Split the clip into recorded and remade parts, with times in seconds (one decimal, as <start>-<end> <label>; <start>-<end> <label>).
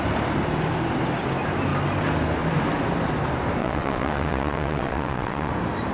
0.0-3.6 recorded; 3.6-5.5 remade; 5.5-5.9 recorded